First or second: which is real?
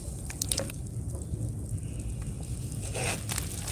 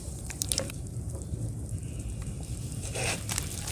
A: first